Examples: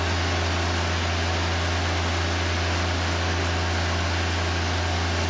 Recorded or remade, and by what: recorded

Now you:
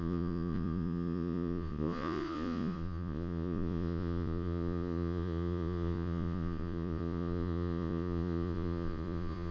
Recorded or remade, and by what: remade, vocoder, Vocos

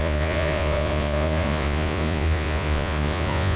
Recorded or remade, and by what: remade, vocoder, Vocos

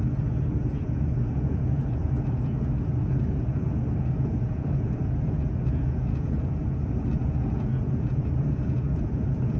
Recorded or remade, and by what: remade, vocoder, Vocos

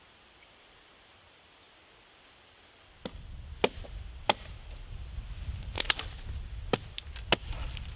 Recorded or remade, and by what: recorded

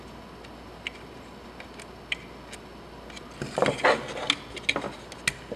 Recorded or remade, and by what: recorded